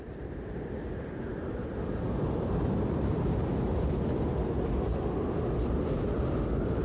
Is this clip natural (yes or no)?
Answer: yes